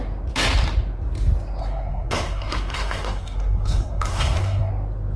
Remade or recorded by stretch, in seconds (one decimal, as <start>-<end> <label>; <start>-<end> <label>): 0.0-1.6 recorded; 1.6-4.7 remade; 4.7-5.2 recorded

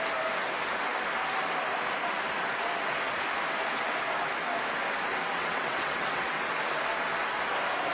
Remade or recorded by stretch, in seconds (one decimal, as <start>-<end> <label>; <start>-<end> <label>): 0.0-5.1 recorded; 5.1-6.4 remade; 6.4-7.9 recorded